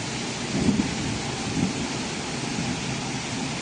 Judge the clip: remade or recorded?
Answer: recorded